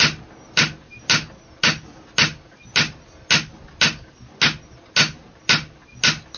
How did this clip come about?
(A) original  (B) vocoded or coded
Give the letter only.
A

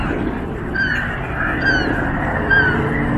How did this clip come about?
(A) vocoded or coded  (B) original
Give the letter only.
B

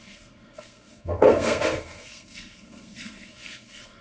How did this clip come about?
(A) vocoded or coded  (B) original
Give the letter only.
A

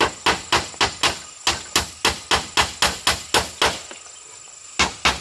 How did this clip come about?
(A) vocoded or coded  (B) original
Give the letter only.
B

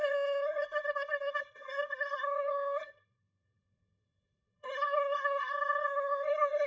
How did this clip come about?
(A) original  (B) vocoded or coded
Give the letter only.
B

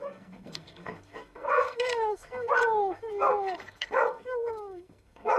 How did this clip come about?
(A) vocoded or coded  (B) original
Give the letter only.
A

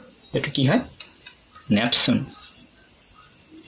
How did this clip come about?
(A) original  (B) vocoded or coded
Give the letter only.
A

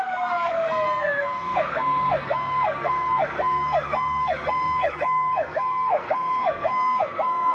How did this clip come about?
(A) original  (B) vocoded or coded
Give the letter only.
B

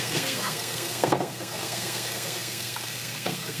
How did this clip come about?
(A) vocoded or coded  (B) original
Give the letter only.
A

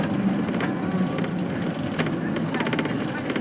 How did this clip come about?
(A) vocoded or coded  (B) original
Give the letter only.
B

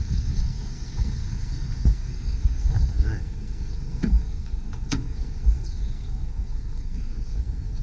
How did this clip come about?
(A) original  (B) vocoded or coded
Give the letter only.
B